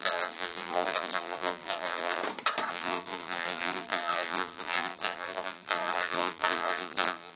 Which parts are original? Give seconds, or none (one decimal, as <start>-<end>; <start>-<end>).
2.2-2.7